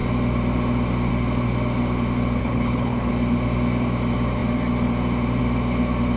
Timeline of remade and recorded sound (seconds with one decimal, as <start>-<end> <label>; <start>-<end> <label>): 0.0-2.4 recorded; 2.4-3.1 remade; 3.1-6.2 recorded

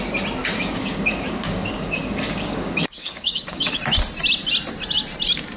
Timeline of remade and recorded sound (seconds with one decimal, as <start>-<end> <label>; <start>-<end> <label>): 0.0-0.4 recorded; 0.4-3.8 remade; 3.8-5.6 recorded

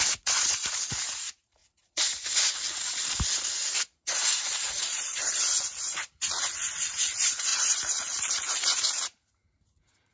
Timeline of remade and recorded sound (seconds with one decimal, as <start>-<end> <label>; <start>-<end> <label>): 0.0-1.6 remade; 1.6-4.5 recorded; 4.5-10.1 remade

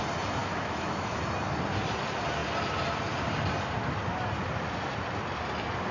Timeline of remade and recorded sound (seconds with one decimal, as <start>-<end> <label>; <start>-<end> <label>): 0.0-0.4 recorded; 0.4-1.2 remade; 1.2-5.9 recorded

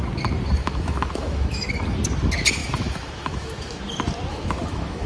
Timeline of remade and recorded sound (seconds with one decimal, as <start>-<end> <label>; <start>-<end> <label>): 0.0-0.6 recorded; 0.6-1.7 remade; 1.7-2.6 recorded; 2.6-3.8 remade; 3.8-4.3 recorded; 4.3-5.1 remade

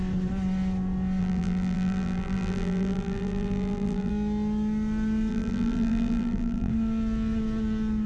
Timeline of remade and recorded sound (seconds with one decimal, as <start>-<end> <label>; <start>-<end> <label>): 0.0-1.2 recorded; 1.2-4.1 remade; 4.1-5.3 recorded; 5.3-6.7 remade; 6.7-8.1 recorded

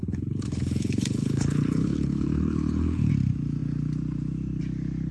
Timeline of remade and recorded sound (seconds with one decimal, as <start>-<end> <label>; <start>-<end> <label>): 0.0-3.1 remade; 3.1-5.1 recorded

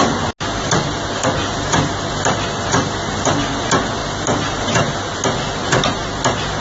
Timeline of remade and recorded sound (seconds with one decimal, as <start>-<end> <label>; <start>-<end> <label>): 0.0-1.4 recorded; 1.4-3.6 remade; 3.6-4.0 recorded; 4.0-5.1 remade; 5.1-6.6 recorded